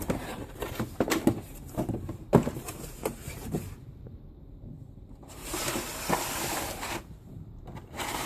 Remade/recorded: remade